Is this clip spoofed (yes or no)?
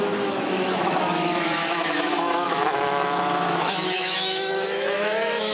yes